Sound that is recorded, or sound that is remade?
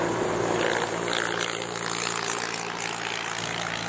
recorded